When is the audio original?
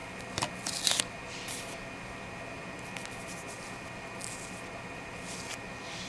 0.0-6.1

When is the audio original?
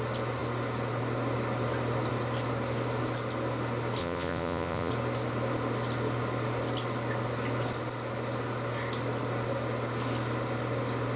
0.0-4.0; 4.9-11.2